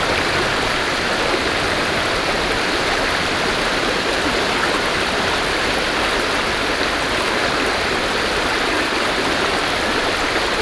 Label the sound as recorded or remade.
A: recorded